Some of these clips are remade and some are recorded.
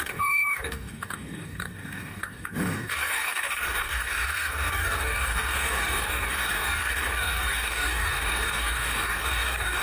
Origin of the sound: remade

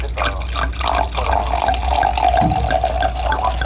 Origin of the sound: recorded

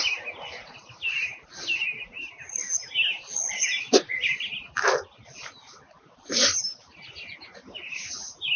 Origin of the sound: recorded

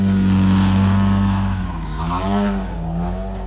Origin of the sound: remade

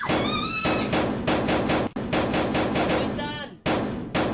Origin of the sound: recorded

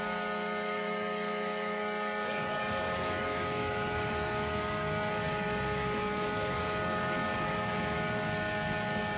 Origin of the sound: remade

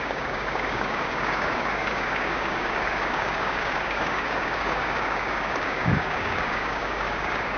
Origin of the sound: remade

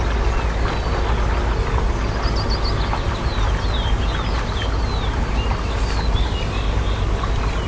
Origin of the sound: recorded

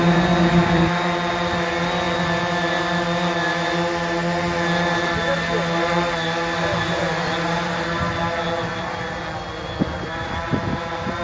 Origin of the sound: recorded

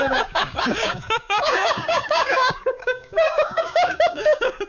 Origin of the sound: remade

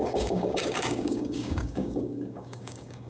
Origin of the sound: remade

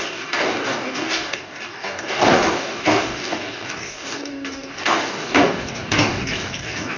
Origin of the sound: remade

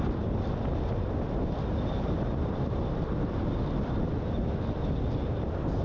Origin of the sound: recorded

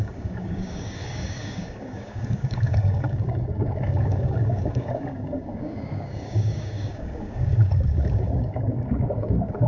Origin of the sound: remade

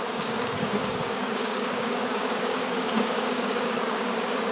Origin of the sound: remade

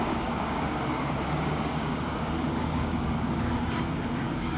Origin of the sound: remade